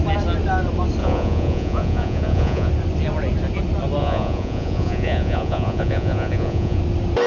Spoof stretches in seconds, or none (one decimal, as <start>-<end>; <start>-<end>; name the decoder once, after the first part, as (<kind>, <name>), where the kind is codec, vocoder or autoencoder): 1.0-2.7 (vocoder, Vocos); 4.0-6.8